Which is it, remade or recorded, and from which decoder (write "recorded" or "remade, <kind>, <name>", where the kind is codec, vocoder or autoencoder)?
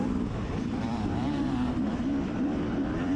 remade, vocoder, BigVGAN v2